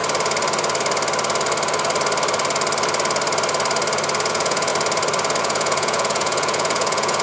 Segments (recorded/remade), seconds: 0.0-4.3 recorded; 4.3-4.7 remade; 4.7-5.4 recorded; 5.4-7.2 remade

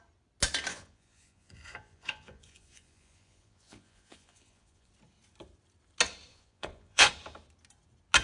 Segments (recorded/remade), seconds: 0.0-0.7 recorded; 0.7-4.9 remade; 4.9-6.3 recorded; 6.3-7.1 remade; 7.1-8.2 recorded

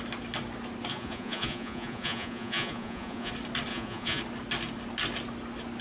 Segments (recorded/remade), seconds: 0.0-0.9 recorded; 0.9-3.3 remade; 3.3-3.7 recorded; 3.7-4.2 remade; 4.2-5.8 recorded

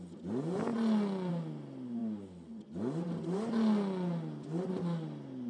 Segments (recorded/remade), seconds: 0.0-5.5 recorded

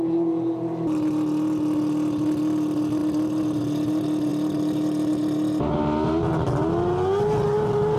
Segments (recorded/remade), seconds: 0.0-8.0 recorded